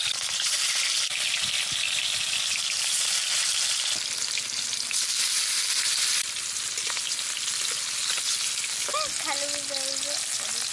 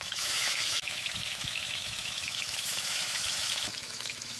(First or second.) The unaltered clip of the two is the first